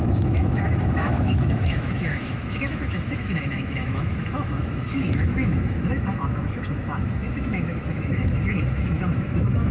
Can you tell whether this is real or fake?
fake